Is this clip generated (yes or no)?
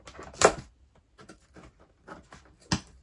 no